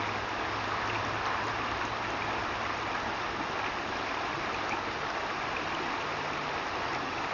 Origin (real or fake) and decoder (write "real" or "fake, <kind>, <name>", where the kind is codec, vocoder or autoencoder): real